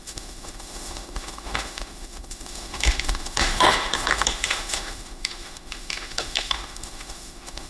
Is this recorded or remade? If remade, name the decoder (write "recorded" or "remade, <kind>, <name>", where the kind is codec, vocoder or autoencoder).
remade, autoencoder, DAC-VAE